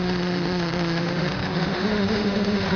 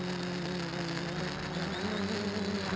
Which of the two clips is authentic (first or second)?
second